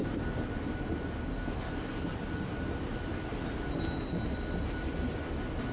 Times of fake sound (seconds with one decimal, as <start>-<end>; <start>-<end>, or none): none